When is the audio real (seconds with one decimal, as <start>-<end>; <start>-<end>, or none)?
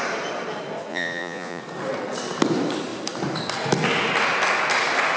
0.0-0.9; 1.6-5.2